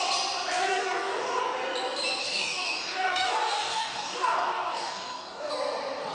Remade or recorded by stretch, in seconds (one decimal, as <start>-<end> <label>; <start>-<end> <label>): 0.0-0.7 recorded; 0.7-1.4 remade; 1.4-2.2 recorded; 2.2-5.5 remade; 5.5-6.1 recorded